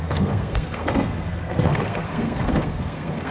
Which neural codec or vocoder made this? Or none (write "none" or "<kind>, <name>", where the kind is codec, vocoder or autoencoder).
codec, SNAC